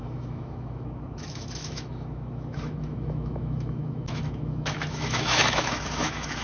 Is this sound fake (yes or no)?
yes